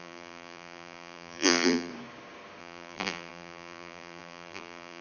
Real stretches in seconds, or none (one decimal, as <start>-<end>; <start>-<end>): 1.9-2.6